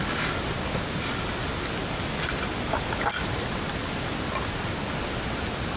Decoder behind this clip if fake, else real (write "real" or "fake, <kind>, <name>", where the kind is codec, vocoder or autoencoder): real